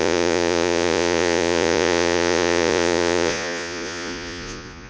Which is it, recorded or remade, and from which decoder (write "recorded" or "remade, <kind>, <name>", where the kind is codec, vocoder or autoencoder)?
remade, vocoder, Vocos